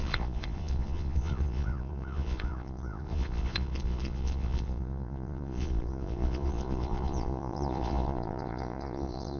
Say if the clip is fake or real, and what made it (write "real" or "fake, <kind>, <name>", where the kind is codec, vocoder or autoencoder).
fake, vocoder, Vocos